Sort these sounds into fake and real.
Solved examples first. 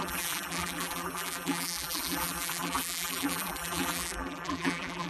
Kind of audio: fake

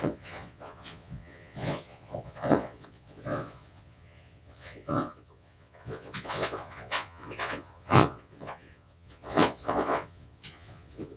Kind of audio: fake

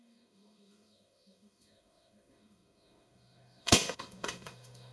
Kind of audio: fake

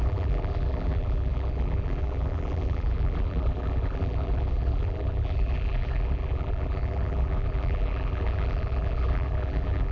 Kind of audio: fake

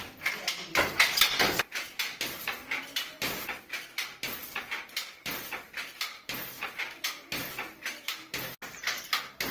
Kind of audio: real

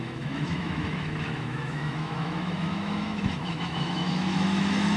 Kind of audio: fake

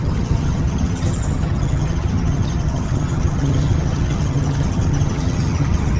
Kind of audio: fake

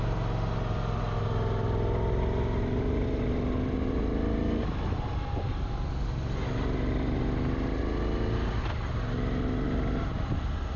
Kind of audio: real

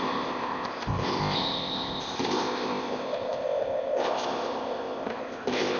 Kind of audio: fake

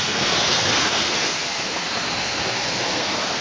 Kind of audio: fake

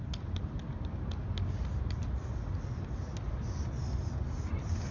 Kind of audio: real